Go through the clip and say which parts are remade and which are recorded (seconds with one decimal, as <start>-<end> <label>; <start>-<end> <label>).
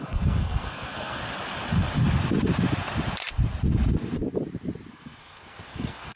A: 0.0-1.2 remade; 1.2-4.9 recorded; 4.9-6.2 remade